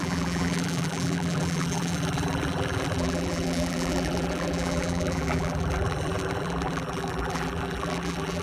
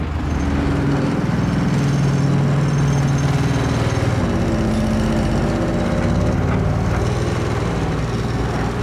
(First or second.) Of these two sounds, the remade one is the first